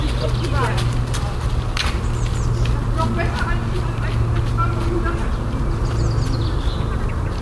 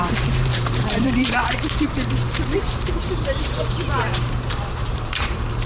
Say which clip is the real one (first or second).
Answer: first